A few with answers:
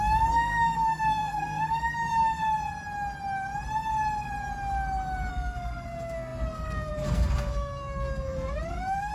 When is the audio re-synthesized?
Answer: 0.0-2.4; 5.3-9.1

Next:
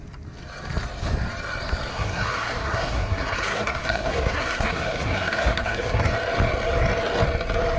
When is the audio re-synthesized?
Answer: 1.9-6.0

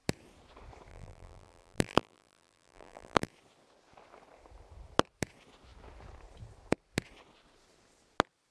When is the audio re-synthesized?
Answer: 0.9-3.3